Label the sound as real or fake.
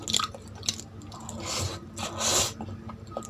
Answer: real